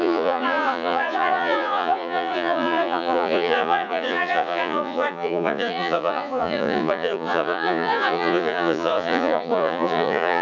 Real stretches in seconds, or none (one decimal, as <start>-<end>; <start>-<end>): none